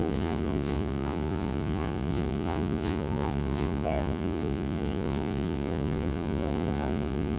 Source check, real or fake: fake